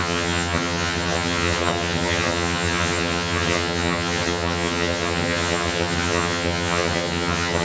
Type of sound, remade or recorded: remade